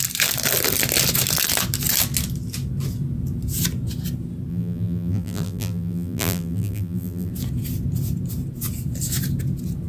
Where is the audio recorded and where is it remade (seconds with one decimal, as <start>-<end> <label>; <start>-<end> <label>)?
0.0-4.5 recorded; 4.5-7.3 remade; 7.3-9.9 recorded